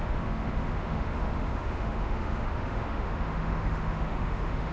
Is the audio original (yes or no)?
no